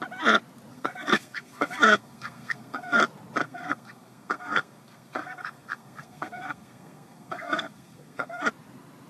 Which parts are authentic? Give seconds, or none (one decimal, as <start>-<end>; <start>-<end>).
0.0-0.7; 3.0-3.4; 8.4-9.1